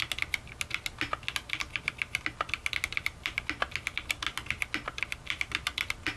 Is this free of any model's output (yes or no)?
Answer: yes